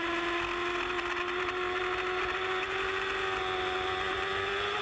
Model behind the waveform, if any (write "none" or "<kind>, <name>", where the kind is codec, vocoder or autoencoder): none